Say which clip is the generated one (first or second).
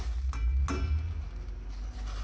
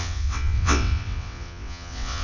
second